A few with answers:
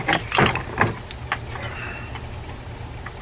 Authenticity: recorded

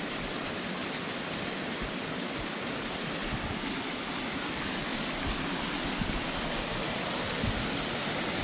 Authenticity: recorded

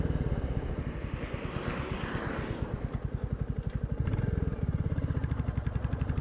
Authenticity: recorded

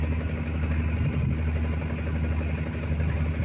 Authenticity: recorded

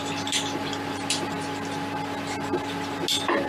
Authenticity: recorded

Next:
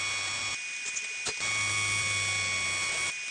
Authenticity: recorded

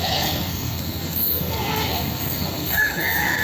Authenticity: remade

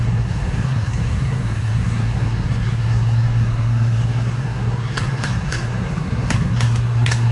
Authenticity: remade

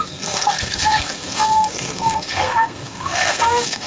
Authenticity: remade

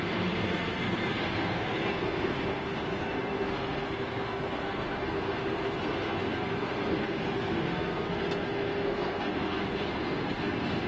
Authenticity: remade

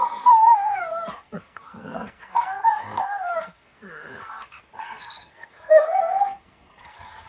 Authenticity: remade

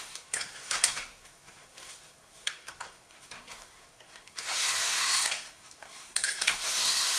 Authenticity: remade